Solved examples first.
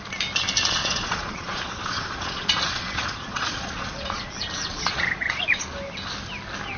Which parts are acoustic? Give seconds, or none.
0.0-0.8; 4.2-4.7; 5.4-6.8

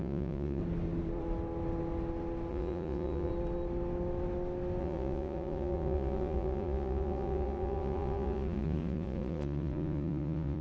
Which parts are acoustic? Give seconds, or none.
0.6-2.5; 3.3-4.8

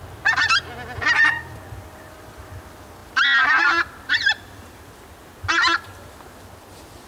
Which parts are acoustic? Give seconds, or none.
0.0-7.1

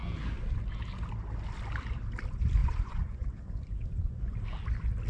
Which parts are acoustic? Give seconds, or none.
0.0-2.6; 4.2-5.1

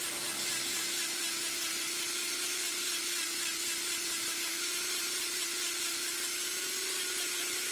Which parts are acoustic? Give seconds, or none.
0.0-7.7

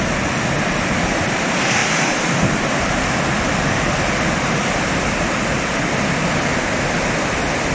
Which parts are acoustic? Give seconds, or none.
0.0-7.7

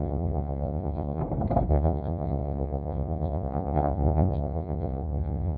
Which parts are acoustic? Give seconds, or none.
1.2-1.7